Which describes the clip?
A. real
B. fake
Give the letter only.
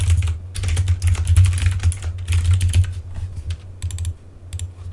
A